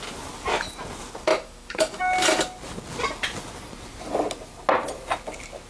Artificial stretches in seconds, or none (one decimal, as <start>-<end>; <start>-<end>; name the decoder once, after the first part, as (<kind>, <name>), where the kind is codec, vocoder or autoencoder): 1.3-2.0 (autoencoder, DAC-VAE)